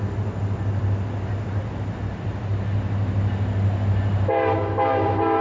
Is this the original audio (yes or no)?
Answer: yes